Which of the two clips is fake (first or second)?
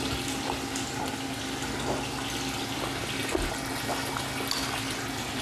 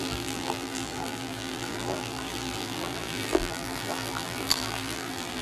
second